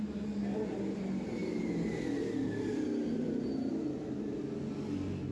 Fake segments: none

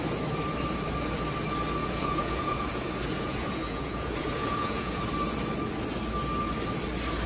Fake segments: 1.8-5.0 (vocoder, Vocos)

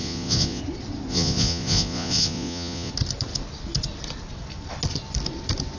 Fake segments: 0.0-0.6 (vocoder, Vocos); 1.1-2.9